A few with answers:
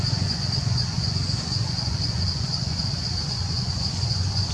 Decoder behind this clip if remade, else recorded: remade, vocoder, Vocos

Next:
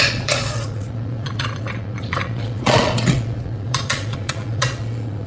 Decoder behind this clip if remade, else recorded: remade, vocoder, Vocos